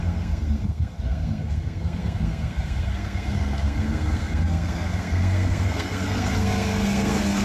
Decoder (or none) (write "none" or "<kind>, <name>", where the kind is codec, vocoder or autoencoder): codec, SNAC